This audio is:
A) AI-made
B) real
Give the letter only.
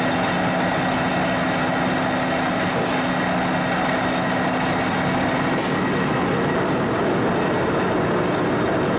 B